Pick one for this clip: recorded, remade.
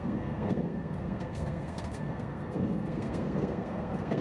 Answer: remade